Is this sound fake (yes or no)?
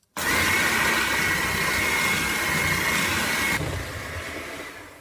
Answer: no